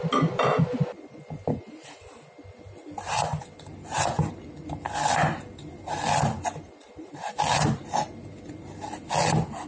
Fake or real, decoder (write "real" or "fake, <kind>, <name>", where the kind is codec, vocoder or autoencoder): real